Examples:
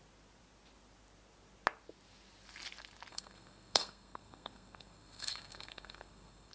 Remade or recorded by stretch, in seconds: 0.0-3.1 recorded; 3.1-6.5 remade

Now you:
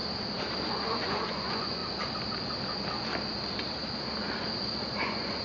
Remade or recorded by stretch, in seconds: 0.0-0.7 recorded; 0.7-1.8 remade; 1.8-5.0 recorded; 5.0-5.4 remade